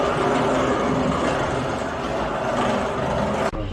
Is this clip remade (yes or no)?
no